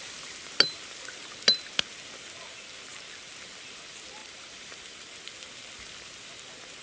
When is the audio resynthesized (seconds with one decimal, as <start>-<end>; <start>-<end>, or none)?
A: 4.2-5.1